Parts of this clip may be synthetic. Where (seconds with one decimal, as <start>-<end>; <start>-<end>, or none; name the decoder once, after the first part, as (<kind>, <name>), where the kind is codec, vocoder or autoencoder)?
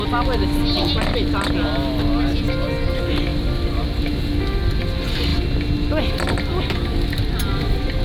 none